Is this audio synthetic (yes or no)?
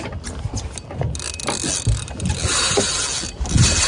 no